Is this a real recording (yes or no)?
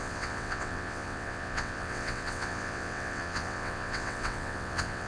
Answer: no